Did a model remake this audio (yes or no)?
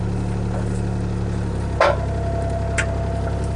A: no